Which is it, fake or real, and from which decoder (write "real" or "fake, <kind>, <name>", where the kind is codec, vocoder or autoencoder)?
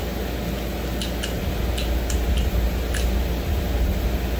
real